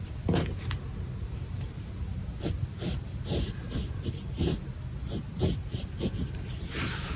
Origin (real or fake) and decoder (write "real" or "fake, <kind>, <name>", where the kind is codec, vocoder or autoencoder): real